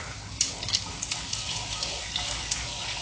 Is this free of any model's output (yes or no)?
no